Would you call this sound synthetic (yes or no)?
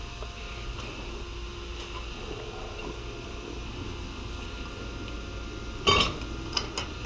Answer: no